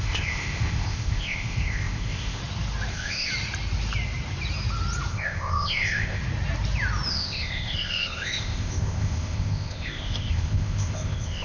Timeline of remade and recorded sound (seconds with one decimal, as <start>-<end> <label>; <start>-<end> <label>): 0.0-2.4 remade; 2.4-2.9 recorded; 2.9-3.3 remade; 3.3-5.1 recorded; 5.1-6.2 remade; 6.2-7.1 recorded; 7.1-11.4 remade